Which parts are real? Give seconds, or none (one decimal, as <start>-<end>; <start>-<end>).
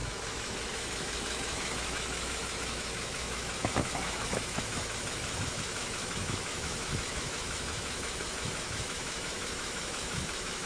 none